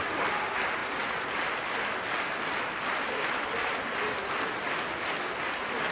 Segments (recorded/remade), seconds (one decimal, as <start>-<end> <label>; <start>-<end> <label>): 0.0-5.9 recorded